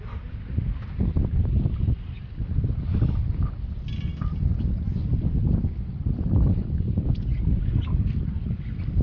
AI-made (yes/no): no